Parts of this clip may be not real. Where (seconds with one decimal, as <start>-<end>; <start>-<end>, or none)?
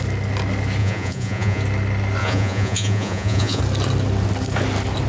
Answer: 0.8-1.6; 2.2-3.6